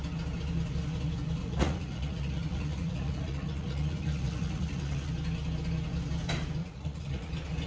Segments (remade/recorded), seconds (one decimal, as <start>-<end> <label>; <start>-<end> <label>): 0.0-1.4 recorded; 1.4-5.1 remade; 5.1-6.6 recorded; 6.6-7.3 remade; 7.3-7.7 recorded